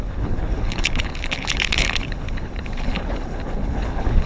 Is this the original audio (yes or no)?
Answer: no